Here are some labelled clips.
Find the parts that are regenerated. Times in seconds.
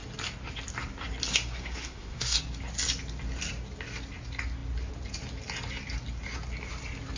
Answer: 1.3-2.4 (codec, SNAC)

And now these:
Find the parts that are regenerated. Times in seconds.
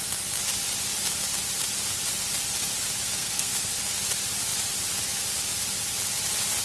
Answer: 3.2-3.7 (codec, SNAC)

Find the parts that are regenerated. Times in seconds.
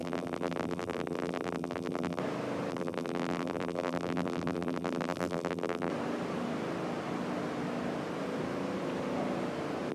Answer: 0.0-2.2 (vocoder, BigVGAN v2); 2.7-5.9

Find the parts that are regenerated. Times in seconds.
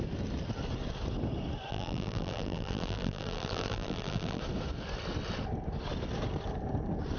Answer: 1.7-4.4 (vocoder, BigVGAN v2)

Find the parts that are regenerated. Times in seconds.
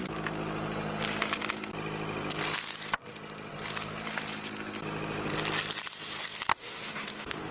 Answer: 6.5-7.5 (autoencoder, DAC-VAE)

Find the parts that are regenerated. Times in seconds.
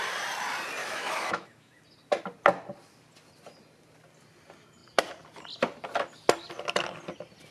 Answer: 0.8-1.8 (autoencoder, DAC-VAE)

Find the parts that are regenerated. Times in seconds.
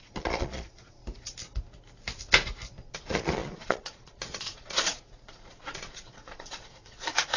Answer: 0.0-1.0 (vocoder, Vocos); 3.0-7.4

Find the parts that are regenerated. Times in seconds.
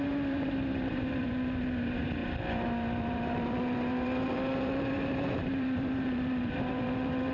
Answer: 0.0-7.3 (vocoder, BigVGAN v2)